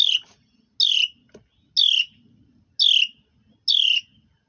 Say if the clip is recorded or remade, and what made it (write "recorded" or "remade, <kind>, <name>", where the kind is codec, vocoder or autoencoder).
recorded